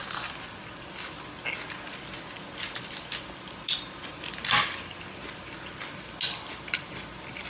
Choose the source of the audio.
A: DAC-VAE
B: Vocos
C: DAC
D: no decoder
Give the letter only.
D